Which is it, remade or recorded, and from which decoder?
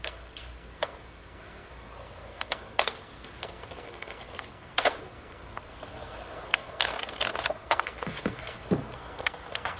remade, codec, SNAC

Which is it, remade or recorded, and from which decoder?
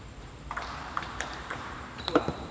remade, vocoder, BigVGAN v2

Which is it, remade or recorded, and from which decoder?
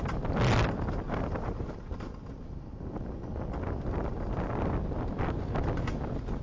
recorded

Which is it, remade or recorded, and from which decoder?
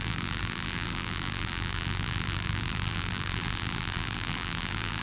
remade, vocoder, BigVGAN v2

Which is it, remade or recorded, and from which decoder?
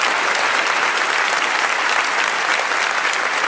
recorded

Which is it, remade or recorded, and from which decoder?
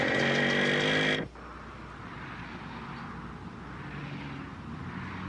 recorded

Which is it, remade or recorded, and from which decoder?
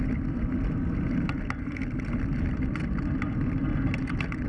recorded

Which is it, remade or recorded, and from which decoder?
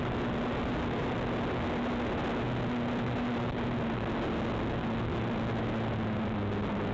recorded